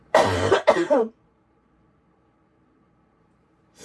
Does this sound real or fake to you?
fake